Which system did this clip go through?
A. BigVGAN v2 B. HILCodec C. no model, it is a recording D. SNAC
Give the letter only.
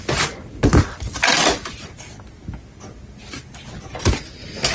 C